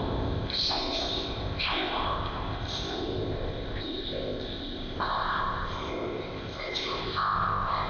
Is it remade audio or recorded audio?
remade